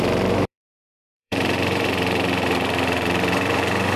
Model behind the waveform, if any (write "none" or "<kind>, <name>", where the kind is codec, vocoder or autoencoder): vocoder, BigVGAN v2